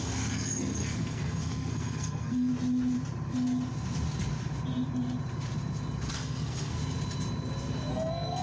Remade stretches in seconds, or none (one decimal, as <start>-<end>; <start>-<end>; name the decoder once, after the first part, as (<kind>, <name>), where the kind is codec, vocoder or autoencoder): 0.0-2.5 (codec, SNAC); 6.1-6.8; 7.9-8.4